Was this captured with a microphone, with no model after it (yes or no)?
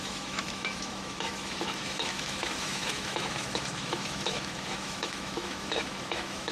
no